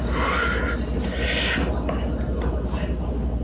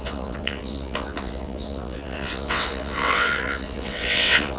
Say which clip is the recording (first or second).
first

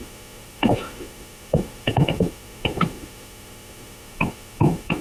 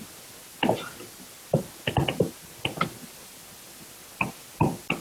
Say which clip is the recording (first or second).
second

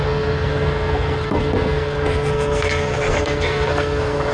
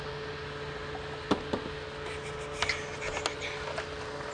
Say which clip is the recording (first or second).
second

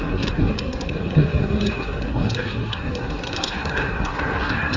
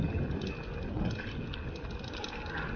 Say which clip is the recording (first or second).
second